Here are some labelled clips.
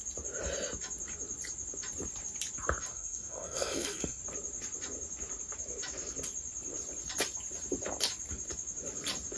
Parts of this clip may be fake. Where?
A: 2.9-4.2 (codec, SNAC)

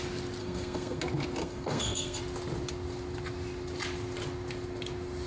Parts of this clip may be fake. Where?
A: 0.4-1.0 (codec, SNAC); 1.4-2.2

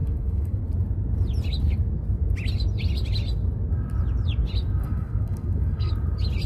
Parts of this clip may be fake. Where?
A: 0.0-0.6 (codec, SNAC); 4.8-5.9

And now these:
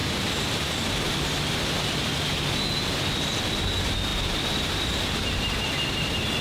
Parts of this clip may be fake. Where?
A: none

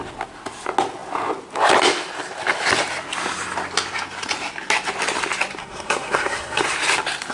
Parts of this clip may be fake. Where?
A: 5.6-6.6 (codec, SNAC)

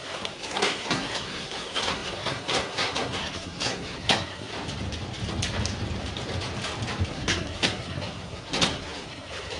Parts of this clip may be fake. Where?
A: 0.0-4.5 (codec, SNAC); 7.1-9.6

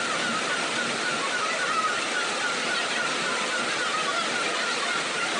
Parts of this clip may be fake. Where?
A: none

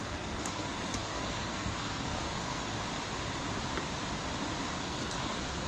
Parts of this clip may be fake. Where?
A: 0.0-2.7 (codec, SNAC); 4.7-5.7